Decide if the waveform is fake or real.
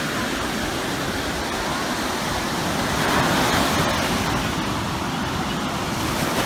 real